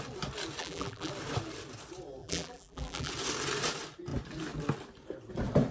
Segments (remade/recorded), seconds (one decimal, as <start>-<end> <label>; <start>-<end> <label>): 0.0-0.6 recorded; 0.6-1.1 remade; 1.1-2.2 recorded; 2.2-3.1 remade; 3.1-5.7 recorded